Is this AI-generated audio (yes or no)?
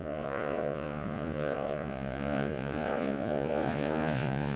yes